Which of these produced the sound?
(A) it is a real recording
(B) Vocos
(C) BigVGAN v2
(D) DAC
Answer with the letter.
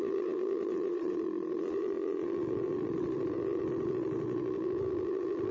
B